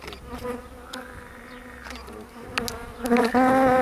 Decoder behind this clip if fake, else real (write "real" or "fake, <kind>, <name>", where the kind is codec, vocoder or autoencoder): real